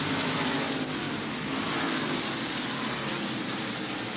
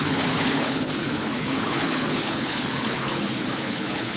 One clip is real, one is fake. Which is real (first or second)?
first